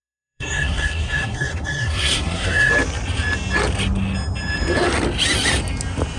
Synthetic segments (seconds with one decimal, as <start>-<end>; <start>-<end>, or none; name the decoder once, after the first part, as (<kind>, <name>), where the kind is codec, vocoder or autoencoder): 0.0-2.7 (codec, SNAC)